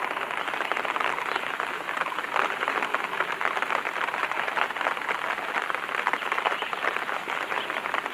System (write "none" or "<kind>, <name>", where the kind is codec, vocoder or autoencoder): none